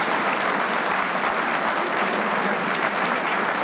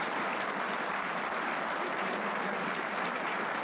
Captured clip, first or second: first